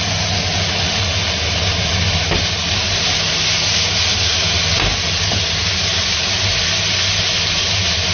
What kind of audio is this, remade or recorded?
recorded